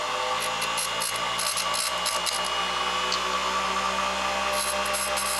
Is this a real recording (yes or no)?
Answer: yes